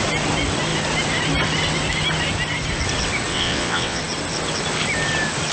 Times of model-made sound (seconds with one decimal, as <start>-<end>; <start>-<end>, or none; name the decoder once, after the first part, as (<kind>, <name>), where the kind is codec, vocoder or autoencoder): 3.3-4.0 (vocoder, WaveNeXt)